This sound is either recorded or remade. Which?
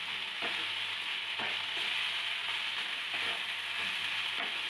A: recorded